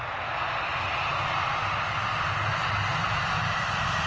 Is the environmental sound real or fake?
real